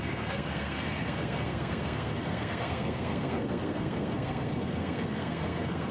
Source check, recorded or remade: remade